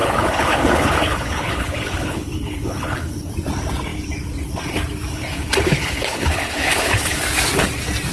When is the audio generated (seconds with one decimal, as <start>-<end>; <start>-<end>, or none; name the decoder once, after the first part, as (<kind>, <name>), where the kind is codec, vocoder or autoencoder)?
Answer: 0.0-3.3 (codec, HILCodec); 5.1-7.2